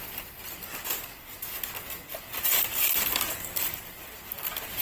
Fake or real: real